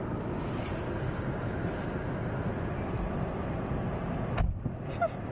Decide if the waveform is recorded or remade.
recorded